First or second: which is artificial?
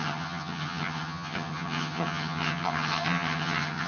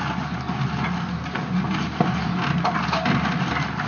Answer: first